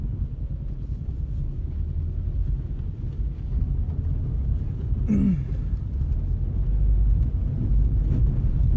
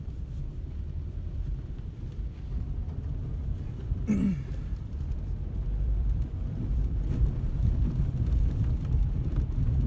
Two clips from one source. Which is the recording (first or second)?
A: first